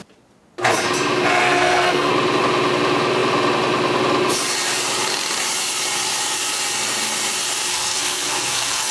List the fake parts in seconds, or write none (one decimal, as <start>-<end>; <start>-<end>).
1.4-2.1; 7.7-8.9